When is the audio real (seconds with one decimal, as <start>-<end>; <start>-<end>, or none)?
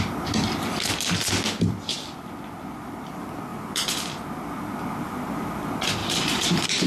0.0-3.5; 4.0-6.0